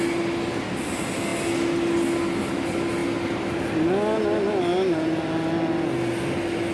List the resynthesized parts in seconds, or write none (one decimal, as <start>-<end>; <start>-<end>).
none